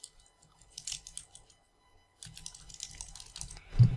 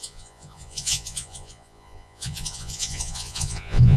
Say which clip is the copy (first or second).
second